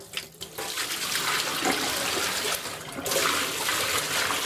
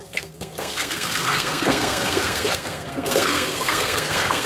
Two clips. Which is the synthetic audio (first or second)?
second